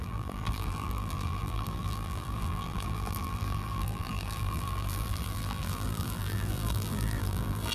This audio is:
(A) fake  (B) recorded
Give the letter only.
A